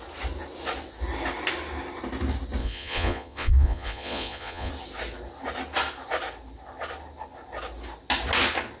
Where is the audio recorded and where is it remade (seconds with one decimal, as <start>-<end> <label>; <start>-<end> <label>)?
0.0-2.6 recorded; 2.6-4.7 remade; 4.7-8.8 recorded